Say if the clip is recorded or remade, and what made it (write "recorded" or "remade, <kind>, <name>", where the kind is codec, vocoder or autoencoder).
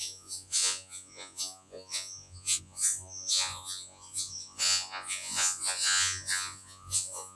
remade, vocoder, Vocos